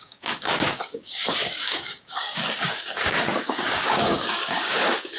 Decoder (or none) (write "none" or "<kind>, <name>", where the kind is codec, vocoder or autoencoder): codec, DAC